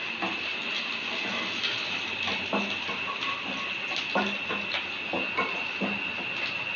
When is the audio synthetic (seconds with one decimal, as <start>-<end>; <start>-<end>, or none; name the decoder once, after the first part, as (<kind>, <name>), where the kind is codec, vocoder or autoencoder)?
none